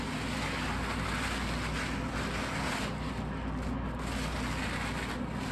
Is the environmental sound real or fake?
real